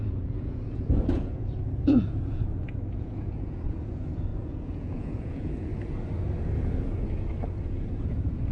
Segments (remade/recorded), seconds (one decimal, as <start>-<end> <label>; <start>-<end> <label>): 0.0-5.7 remade; 5.7-7.6 recorded; 7.6-8.5 remade